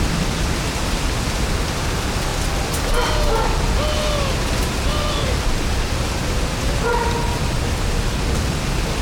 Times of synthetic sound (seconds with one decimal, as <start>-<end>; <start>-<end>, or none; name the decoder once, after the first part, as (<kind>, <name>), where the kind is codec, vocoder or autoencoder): none